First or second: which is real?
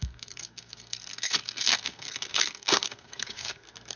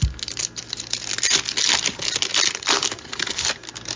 second